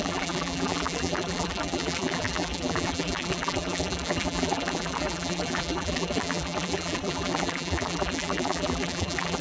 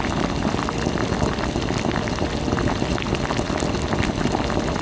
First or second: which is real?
second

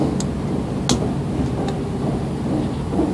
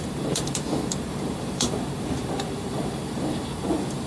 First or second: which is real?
first